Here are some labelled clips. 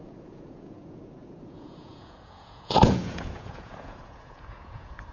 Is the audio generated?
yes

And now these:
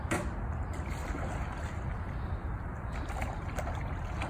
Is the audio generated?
no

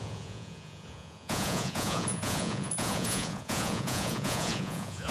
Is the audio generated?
yes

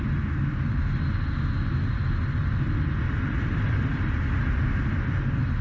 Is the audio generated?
no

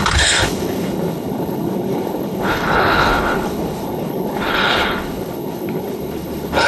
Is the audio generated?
yes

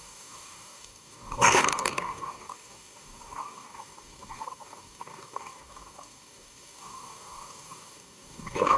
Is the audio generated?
yes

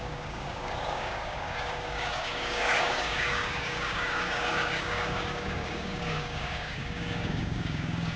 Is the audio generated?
yes